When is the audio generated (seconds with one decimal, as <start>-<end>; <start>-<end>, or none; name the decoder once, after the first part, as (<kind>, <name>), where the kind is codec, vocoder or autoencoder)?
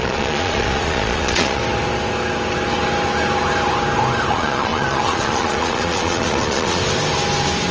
0.0-1.6 (vocoder, Vocos); 4.3-6.8